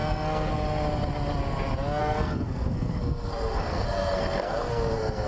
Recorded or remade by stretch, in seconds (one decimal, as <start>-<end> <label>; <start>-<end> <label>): 0.0-0.5 remade; 0.5-2.0 recorded; 2.0-5.3 remade